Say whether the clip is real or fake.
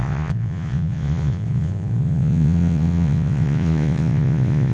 fake